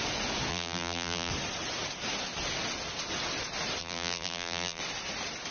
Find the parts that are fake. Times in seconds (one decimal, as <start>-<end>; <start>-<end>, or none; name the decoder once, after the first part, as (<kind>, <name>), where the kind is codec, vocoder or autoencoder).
0.5-1.3 (vocoder, BigVGAN v2); 3.8-4.8